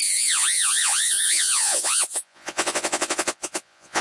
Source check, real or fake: fake